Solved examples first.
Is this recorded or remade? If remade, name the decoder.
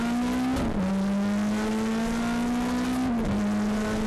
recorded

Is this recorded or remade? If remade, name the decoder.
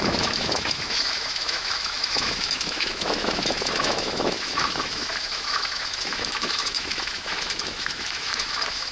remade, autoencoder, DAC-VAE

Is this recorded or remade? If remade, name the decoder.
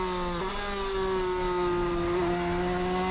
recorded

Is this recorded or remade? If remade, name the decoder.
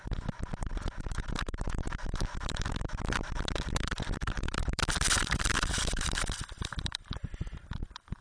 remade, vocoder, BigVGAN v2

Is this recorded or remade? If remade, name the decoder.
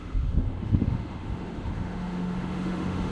remade, autoencoder, DAC-VAE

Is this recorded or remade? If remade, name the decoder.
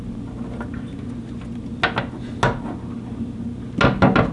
recorded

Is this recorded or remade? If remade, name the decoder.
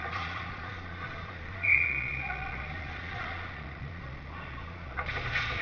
remade, vocoder, Vocos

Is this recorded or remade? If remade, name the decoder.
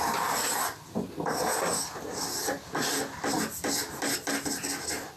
recorded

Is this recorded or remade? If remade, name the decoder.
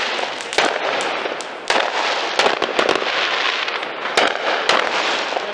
recorded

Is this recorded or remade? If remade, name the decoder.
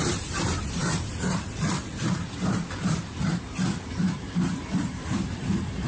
remade, vocoder, BigVGAN v2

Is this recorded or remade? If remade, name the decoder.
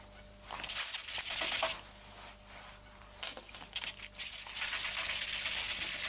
recorded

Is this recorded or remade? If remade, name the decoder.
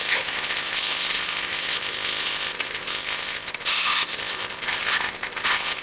remade, codec, ZipCodec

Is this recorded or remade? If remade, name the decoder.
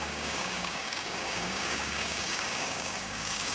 remade, codec, DAC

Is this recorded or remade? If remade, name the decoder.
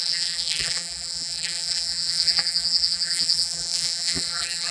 remade, vocoder, BigVGAN v2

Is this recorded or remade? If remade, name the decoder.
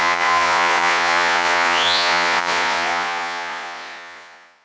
remade, vocoder, Vocos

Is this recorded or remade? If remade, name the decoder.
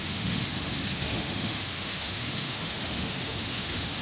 remade, autoencoder, DAC-VAE